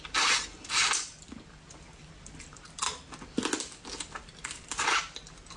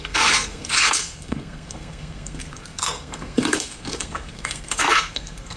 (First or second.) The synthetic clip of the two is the second